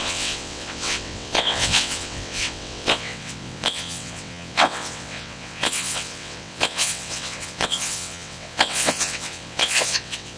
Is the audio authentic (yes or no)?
no